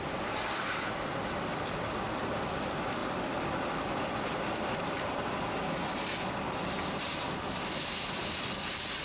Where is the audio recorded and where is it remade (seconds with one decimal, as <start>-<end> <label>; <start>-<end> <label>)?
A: 0.0-9.0 recorded